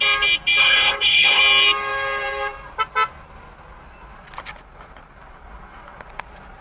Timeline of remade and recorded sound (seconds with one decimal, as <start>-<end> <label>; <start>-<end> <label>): 0.0-0.6 recorded; 0.6-1.4 remade; 1.4-6.6 recorded